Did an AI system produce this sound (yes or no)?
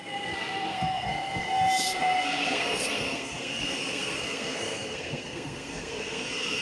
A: yes